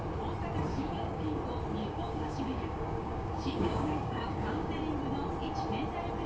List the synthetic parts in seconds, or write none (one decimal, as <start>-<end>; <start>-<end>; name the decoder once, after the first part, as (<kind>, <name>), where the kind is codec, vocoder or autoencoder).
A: 0.7-1.4 (codec, DAC); 1.8-4.7

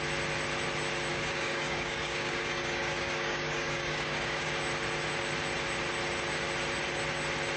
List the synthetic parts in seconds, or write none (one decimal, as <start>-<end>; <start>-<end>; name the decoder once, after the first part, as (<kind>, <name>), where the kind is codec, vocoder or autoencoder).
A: 1.1-4.5 (codec, DAC)

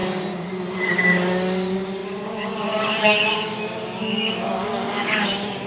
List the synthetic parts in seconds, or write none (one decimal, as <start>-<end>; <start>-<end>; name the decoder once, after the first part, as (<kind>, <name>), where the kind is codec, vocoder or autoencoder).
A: 0.8-5.7 (codec, DAC)